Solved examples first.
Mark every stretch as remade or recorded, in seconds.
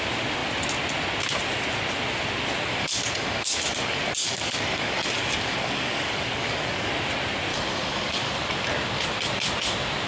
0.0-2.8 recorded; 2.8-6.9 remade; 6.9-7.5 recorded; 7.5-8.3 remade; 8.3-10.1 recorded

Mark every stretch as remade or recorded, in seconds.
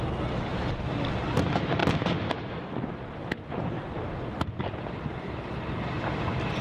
0.0-6.6 recorded